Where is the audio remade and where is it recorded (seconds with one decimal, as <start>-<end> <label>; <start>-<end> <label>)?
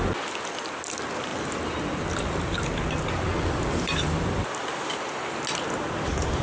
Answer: 0.0-3.3 recorded; 3.3-4.4 remade; 4.4-6.4 recorded